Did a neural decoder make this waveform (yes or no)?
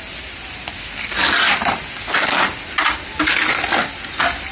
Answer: no